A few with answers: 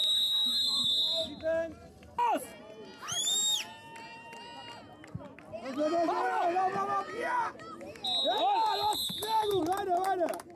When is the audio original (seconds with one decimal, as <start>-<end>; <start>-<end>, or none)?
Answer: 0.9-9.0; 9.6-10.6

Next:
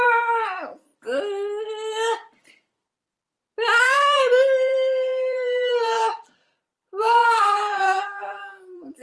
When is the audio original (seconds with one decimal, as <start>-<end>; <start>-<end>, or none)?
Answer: 0.9-3.8

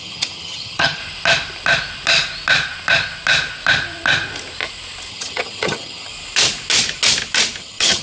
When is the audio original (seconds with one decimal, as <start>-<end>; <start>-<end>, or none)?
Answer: 1.0-5.1; 6.1-7.6

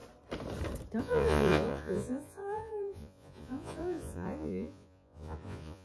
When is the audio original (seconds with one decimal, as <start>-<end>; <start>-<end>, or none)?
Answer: 0.0-1.0